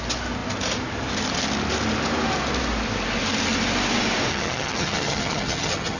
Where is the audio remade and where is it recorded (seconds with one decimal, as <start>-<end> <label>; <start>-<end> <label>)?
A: 0.0-4.3 recorded; 4.3-6.0 remade